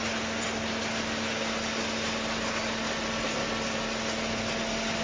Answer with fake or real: real